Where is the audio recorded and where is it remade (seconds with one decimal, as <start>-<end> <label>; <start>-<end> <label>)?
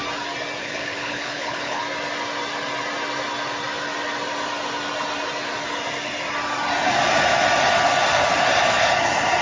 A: 0.0-0.6 recorded; 0.6-1.8 remade; 1.8-9.4 recorded